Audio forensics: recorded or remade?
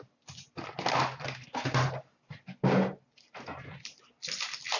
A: recorded